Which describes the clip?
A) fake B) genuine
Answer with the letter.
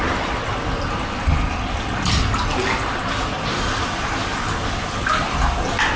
B